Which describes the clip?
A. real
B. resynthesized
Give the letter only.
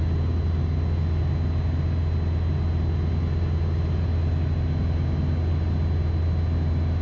A